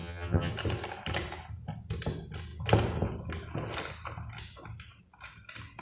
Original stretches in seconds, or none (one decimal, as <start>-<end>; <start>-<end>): 0.5-5.8